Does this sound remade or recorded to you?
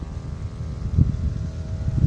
recorded